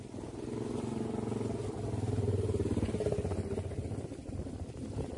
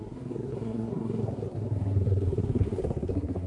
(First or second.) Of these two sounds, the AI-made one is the second